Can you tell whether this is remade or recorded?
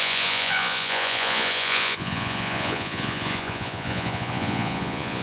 remade